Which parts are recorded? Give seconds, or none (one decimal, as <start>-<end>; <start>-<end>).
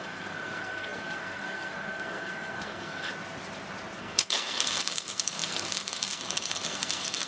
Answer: 3.1-4.0